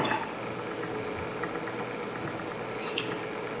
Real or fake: real